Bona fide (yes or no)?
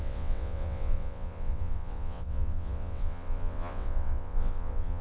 no